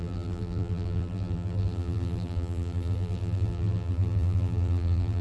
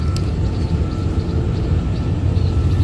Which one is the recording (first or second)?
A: second